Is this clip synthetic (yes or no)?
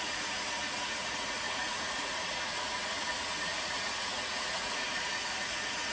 yes